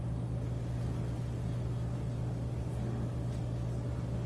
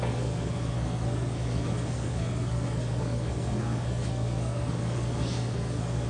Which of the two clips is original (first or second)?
first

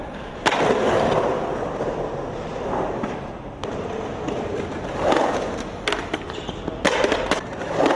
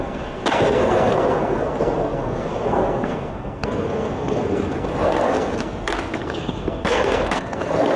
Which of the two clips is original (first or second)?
first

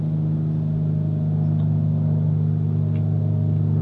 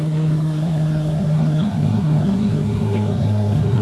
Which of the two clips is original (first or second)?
first